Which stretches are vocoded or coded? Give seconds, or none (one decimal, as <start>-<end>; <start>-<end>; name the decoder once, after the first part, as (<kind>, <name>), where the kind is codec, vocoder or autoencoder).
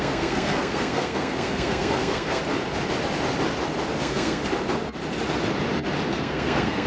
0.0-2.4 (codec, SNAC); 4.0-4.4; 6.2-6.9